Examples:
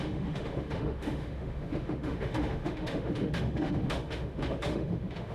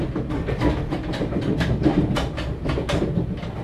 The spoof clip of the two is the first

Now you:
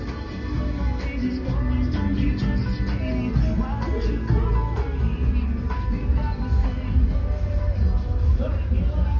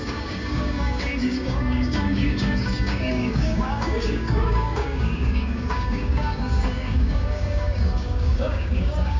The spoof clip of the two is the second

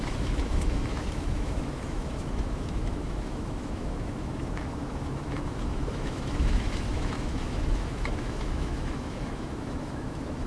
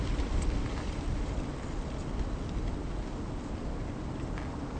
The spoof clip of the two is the first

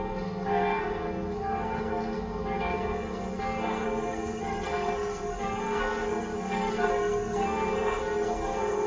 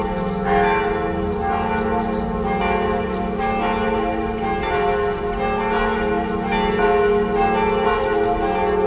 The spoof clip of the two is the first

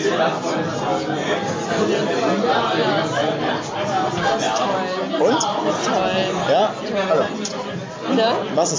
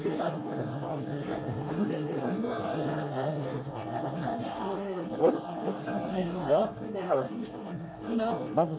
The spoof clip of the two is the second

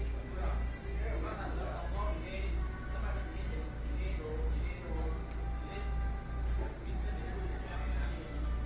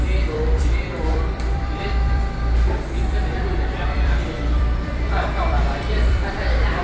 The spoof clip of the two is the second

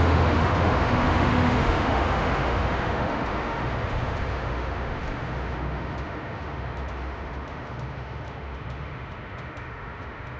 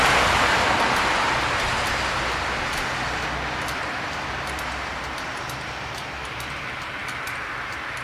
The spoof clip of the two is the first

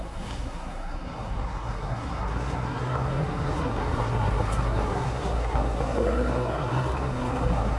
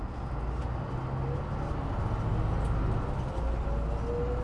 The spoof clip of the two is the first